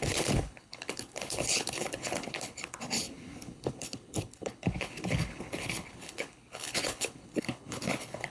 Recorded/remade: remade